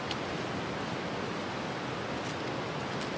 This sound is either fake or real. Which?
real